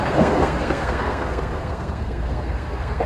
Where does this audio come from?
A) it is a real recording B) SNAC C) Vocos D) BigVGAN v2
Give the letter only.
B